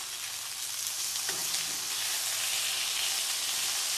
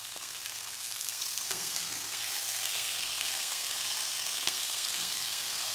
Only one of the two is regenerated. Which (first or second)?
second